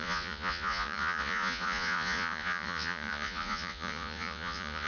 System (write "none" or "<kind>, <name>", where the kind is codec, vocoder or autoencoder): vocoder, Vocos